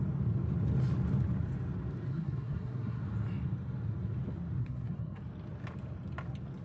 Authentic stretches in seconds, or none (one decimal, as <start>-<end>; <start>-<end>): 0.0-2.1; 3.0-4.6; 5.2-6.6